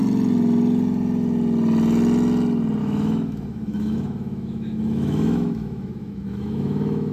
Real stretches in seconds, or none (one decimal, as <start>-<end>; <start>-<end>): 0.0-2.8